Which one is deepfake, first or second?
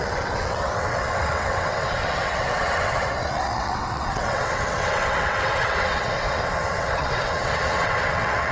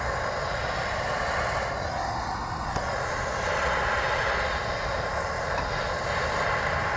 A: first